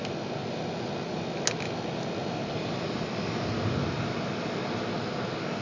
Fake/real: real